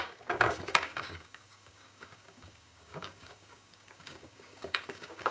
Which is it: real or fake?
fake